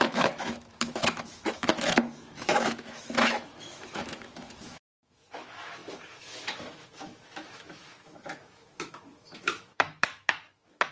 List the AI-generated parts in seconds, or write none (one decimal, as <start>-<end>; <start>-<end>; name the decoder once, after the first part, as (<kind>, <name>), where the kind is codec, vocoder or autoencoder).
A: 0.0-10.9 (autoencoder, DAC-VAE)